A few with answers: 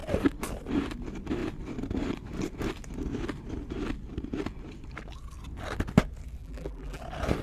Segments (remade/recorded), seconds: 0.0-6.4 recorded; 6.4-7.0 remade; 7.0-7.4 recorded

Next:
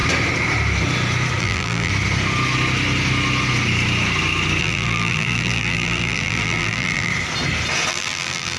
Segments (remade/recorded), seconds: 0.0-1.4 recorded; 1.4-1.9 remade; 1.9-4.6 recorded; 4.6-7.1 remade; 7.1-7.9 recorded; 7.9-8.6 remade

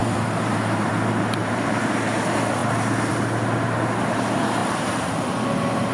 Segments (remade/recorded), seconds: 0.0-0.9 remade; 0.9-1.4 recorded; 1.4-1.9 remade; 1.9-4.6 recorded; 4.6-5.1 remade; 5.1-5.9 recorded

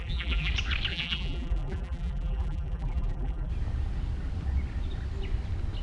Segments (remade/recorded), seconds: 0.0-0.5 remade; 0.5-0.9 recorded; 0.9-3.5 remade; 3.5-5.8 recorded

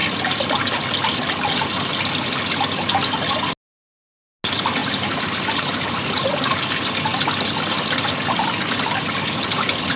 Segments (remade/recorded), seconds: 0.0-4.8 recorded; 4.8-5.9 remade; 5.9-10.0 recorded